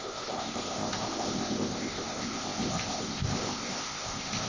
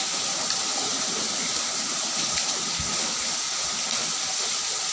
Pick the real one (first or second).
second